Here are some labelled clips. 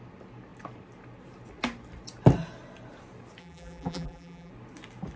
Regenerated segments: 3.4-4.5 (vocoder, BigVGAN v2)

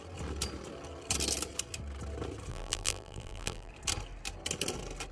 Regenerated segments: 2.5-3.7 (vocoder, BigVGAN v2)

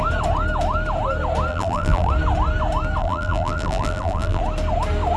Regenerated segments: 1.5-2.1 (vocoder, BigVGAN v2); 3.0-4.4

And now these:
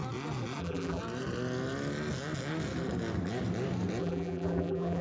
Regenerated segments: 0.6-1.0 (vocoder, BigVGAN v2); 4.0-5.0